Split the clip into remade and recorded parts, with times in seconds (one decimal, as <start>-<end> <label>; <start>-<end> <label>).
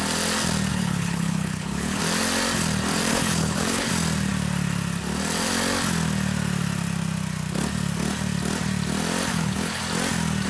0.0-0.7 recorded; 0.7-2.0 remade; 2.0-3.1 recorded; 3.1-3.9 remade; 3.9-9.3 recorded; 9.3-9.8 remade; 9.8-10.5 recorded